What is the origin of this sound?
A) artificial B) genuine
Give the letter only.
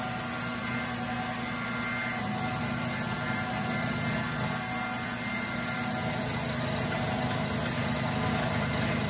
B